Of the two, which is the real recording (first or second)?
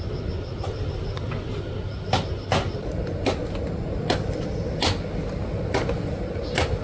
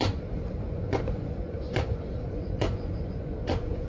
first